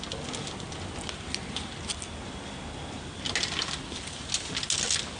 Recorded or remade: recorded